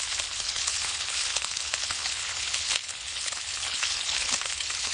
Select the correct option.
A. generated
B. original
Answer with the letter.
A